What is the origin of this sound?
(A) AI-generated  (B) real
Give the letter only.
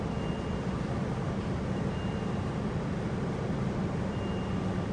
B